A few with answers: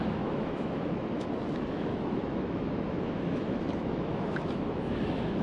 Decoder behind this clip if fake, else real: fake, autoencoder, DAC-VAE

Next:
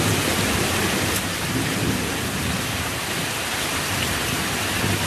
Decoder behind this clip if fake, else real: real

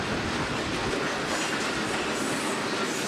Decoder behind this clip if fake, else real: real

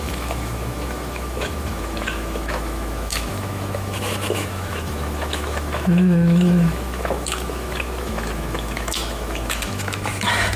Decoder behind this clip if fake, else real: fake, autoencoder, DAC-VAE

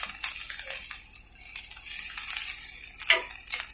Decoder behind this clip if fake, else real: real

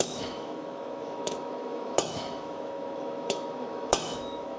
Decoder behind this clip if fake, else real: fake, autoencoder, DAC-VAE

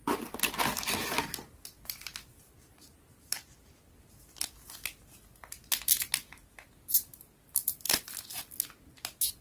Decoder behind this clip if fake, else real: real